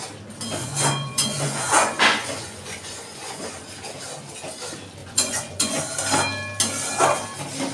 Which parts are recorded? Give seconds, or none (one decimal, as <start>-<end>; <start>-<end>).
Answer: 0.0-0.6; 3.4-5.0; 5.8-7.7